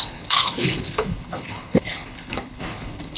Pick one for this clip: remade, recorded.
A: remade